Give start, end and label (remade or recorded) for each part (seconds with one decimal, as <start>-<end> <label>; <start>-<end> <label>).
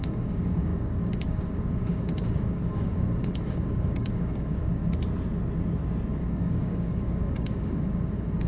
0.0-4.8 remade; 4.8-6.2 recorded; 6.2-8.5 remade